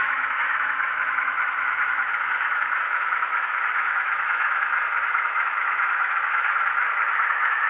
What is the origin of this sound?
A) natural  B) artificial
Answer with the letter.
B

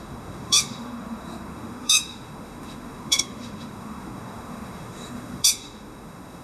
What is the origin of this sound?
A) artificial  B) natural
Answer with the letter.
A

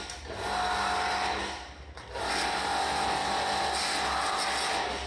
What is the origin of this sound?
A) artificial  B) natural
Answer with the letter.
B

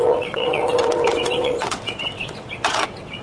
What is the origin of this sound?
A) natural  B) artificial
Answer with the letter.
B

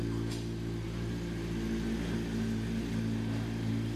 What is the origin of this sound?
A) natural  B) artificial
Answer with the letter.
A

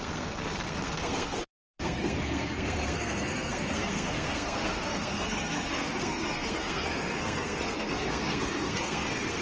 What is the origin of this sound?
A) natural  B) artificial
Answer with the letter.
B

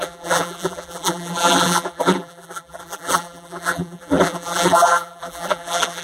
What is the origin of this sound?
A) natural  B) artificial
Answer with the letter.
B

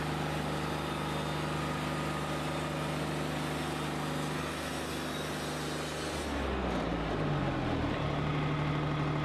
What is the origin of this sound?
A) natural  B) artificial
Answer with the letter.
A